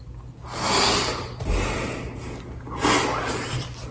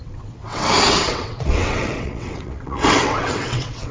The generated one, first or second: second